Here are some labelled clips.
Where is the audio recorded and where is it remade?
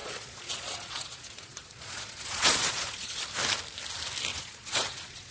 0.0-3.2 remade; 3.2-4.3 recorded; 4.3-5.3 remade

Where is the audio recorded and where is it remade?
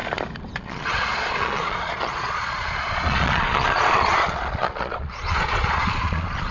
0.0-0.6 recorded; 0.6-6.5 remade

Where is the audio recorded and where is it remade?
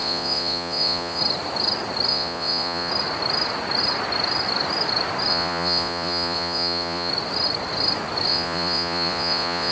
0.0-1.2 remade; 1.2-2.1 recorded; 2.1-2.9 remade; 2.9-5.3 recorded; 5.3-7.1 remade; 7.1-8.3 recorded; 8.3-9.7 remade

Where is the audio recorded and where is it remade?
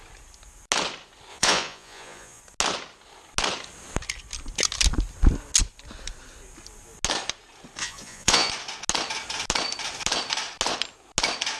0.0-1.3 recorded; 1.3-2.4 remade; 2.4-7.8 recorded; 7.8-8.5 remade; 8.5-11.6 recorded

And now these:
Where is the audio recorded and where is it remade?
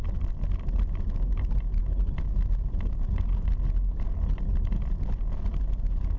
0.0-6.2 recorded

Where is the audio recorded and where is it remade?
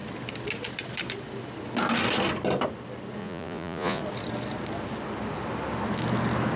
0.0-3.2 recorded; 3.2-4.0 remade; 4.0-6.6 recorded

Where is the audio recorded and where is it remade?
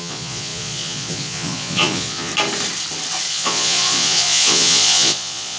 0.0-2.3 remade; 2.3-3.3 recorded; 3.3-5.6 remade